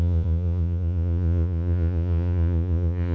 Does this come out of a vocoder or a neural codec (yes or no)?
yes